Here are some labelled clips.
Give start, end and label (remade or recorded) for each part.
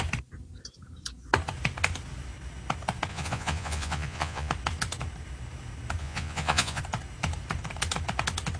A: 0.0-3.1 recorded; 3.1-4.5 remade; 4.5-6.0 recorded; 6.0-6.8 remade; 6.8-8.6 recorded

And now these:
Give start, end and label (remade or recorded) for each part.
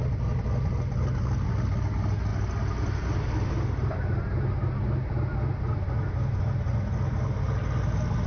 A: 0.0-8.3 recorded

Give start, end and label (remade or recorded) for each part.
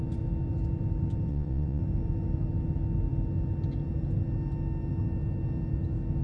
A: 0.0-1.3 recorded; 1.3-1.8 remade; 1.8-6.2 recorded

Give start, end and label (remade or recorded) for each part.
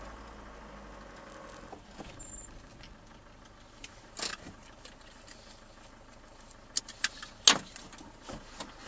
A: 0.0-8.9 recorded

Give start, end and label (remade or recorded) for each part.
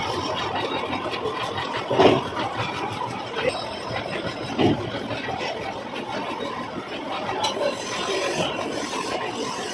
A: 0.0-9.7 recorded